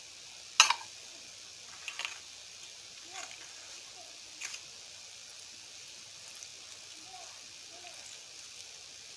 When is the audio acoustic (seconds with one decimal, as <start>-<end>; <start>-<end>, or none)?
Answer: 0.0-9.2